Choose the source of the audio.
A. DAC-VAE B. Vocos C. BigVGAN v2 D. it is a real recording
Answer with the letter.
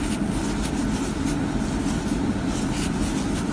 D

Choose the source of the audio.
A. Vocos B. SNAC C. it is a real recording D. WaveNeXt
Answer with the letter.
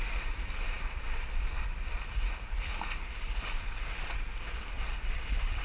C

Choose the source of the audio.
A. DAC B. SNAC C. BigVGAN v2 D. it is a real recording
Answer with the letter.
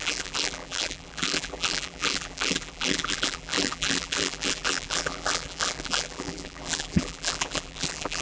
C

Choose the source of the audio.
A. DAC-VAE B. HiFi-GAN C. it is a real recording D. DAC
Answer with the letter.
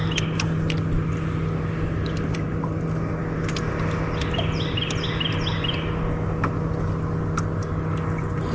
C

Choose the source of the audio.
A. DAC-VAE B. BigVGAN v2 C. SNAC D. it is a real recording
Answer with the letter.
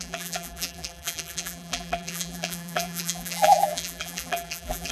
B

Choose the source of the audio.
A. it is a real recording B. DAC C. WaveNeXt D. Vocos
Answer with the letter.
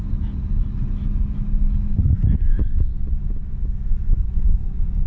A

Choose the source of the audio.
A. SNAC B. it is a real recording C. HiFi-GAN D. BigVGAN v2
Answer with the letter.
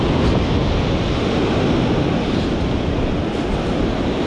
B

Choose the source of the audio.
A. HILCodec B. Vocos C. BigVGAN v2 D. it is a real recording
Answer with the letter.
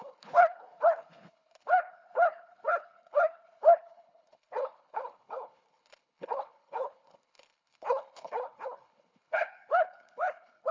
A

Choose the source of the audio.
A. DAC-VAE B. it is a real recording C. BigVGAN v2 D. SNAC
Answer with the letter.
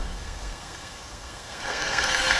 D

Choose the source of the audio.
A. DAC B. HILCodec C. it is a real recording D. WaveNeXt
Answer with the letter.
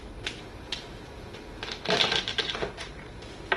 C